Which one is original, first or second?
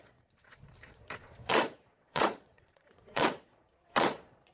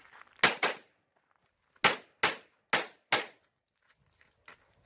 second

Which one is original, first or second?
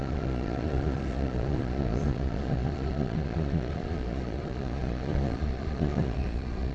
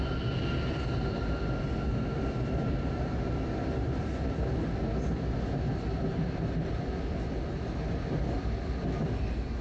second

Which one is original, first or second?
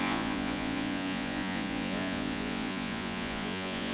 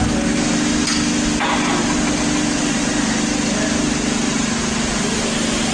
second